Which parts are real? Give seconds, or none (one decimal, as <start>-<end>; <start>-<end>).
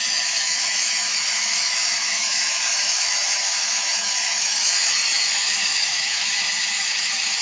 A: none